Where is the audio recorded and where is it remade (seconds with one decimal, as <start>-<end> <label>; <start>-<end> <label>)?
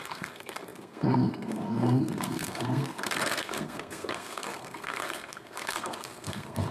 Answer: 0.0-6.7 remade